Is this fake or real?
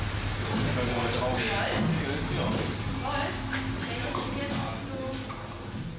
real